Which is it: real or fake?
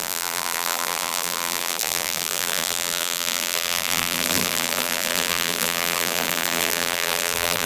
fake